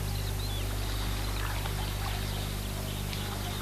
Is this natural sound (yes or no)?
yes